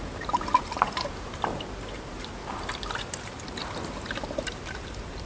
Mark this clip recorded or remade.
remade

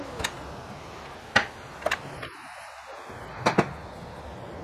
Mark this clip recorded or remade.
recorded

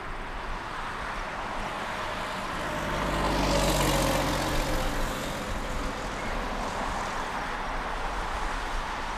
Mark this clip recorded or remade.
recorded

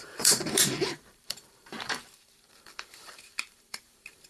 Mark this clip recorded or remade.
remade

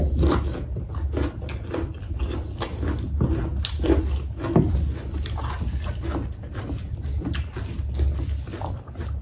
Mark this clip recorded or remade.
recorded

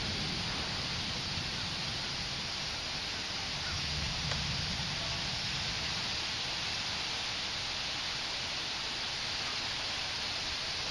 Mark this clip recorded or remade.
recorded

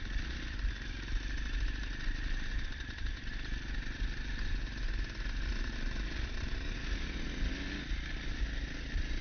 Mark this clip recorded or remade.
recorded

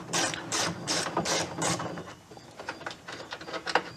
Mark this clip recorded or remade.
remade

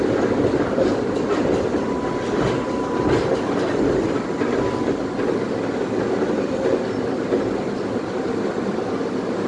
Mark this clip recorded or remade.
recorded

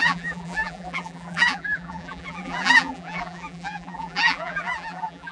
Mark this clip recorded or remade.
remade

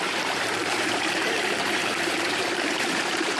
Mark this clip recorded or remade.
remade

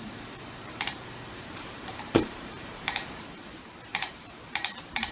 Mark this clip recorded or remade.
remade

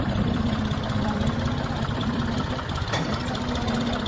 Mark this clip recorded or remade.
remade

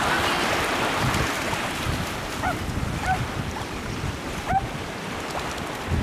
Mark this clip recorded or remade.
remade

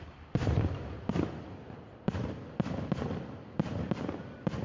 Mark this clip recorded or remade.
remade